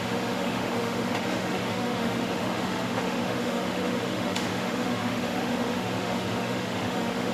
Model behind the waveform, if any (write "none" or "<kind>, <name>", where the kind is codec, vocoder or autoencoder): autoencoder, DAC-VAE